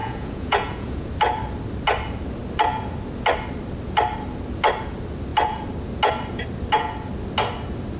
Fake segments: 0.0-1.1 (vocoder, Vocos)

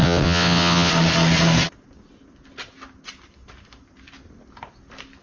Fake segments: 0.0-0.9 (vocoder, WaveNeXt)

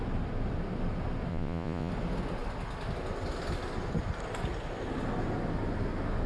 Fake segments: 1.3-1.9 (vocoder, Vocos)

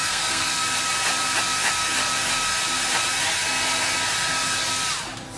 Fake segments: 0.0-0.5 (codec, SNAC)